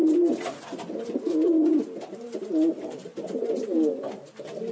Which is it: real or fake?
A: real